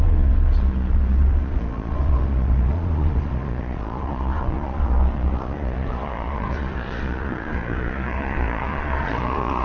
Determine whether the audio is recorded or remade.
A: remade